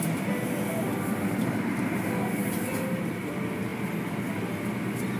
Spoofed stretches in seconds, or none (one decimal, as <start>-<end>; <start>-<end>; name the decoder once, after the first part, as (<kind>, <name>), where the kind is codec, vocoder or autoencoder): none